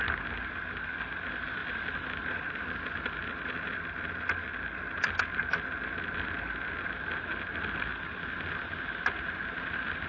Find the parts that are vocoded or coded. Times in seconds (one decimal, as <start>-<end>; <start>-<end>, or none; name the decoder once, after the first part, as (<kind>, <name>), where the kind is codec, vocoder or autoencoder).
none